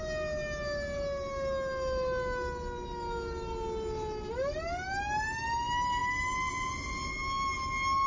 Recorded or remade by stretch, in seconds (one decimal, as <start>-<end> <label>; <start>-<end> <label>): 0.0-8.1 recorded